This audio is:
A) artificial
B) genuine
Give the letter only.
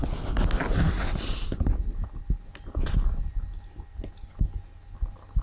B